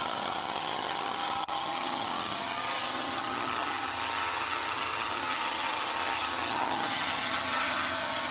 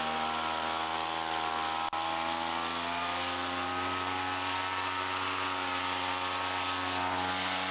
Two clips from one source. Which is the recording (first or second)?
second